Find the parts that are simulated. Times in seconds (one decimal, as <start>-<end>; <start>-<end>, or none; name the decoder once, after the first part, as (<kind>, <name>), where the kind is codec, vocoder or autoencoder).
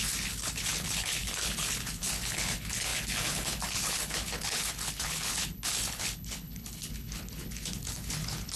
0.0-8.6 (codec, HILCodec)